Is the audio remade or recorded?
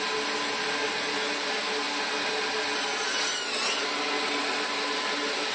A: recorded